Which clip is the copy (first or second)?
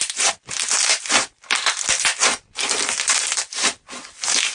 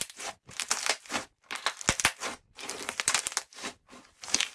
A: second